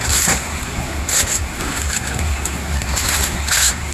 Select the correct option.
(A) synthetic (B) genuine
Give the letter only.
A